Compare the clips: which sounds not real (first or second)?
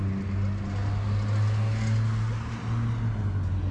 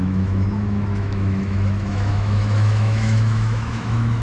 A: second